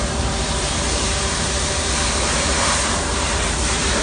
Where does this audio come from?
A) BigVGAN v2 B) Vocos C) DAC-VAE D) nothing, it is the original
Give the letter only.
A